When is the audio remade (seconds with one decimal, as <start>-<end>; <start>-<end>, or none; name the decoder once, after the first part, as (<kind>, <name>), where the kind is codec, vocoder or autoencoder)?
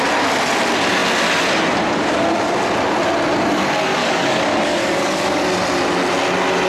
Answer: 4.0-5.4 (codec, DAC)